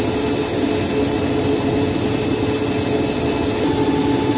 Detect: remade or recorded recorded